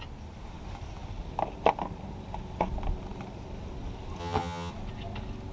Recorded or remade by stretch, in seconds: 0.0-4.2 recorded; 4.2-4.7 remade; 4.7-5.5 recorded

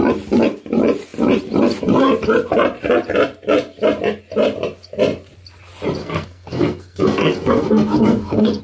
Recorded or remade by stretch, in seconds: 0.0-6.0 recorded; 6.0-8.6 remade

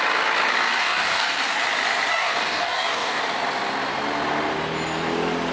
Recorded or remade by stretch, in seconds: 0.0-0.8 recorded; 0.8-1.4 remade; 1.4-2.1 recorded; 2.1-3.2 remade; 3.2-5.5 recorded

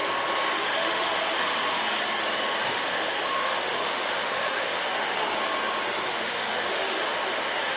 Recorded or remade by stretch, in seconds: 0.0-0.5 recorded; 0.5-1.8 remade; 1.8-2.7 recorded; 2.7-5.3 remade; 5.3-5.9 recorded; 5.9-7.8 remade